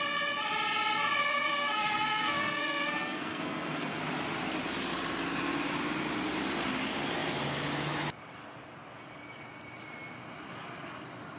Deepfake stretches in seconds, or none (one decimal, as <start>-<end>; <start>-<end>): 1.2-4.0